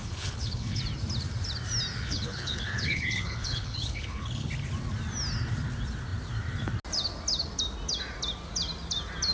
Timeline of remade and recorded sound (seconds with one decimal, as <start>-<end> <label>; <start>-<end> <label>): 0.0-0.8 remade; 0.8-2.1 recorded; 2.1-4.5 remade; 4.5-9.3 recorded